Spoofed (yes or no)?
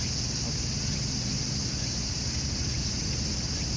no